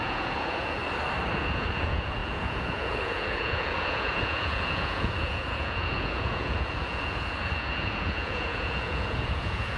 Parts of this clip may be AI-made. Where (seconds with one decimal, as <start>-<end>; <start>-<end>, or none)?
0.0-0.8; 1.3-9.8